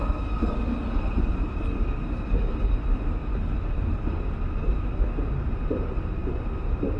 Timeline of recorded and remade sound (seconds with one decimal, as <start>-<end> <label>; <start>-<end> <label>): 0.0-7.0 recorded